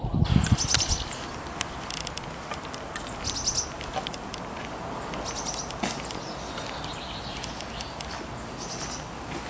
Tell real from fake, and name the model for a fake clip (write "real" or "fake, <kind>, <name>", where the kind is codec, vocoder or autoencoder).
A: real